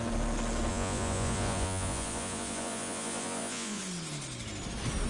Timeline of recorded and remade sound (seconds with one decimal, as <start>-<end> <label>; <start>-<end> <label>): 0.0-0.7 recorded; 0.7-3.8 remade; 3.8-5.1 recorded